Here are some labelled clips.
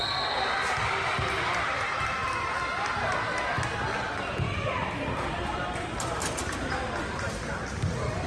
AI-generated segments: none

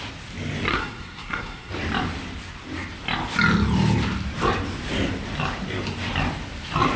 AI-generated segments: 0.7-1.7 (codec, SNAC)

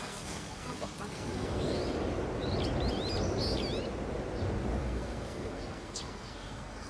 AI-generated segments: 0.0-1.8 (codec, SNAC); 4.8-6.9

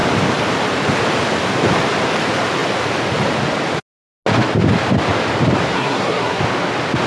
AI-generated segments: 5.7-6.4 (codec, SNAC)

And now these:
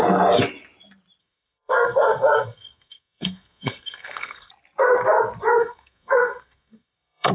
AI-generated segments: 1.2-4.5 (codec, SNAC); 5.6-7.3

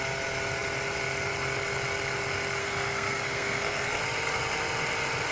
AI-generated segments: 2.6-4.0 (codec, SNAC)